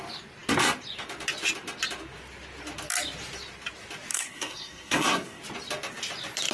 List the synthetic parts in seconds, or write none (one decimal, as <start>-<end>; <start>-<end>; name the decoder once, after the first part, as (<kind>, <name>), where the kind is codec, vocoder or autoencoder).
4.1-5.4 (codec, SNAC)